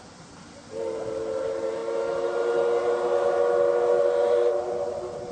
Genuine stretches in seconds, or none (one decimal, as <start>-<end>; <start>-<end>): 0.0-5.3